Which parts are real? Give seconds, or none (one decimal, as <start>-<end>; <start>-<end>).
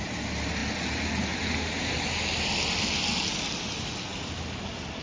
0.0-5.0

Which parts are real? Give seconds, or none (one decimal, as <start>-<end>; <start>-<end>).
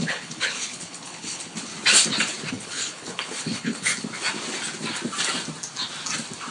1.7-2.5; 3.9-6.5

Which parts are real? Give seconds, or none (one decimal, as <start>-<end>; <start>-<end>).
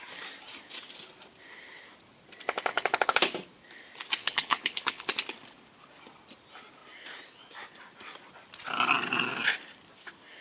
0.0-2.7; 3.3-4.2; 5.1-10.4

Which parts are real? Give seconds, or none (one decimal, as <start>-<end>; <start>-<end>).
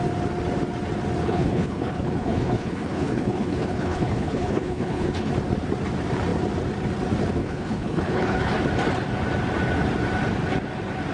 0.0-1.2; 5.3-7.4; 8.5-11.1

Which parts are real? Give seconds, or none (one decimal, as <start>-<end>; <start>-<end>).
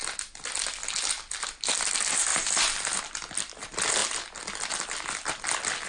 0.0-5.9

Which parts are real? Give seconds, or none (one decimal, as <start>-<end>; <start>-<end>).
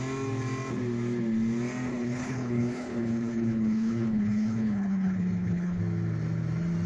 0.0-1.9; 5.8-6.9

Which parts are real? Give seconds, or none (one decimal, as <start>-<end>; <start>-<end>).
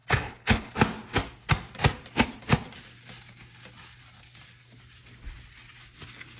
0.7-6.4